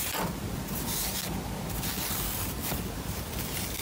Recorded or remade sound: recorded